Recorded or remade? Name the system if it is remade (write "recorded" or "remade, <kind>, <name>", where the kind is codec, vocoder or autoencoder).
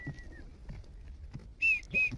recorded